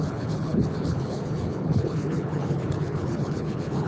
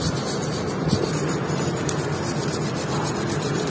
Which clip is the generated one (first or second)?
first